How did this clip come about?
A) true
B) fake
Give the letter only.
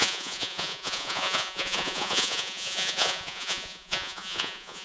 B